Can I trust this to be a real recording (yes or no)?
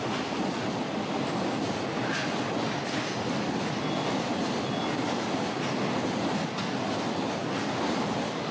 yes